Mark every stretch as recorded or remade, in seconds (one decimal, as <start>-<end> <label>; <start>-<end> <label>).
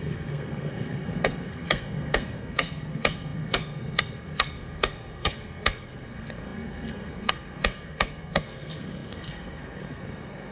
0.0-10.5 remade